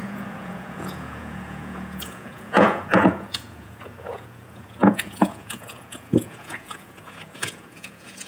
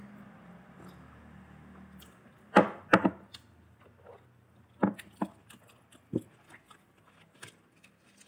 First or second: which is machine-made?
first